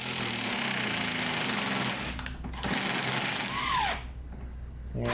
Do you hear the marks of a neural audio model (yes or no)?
no